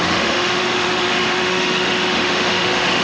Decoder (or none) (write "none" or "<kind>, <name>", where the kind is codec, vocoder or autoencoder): autoencoder, DAC-VAE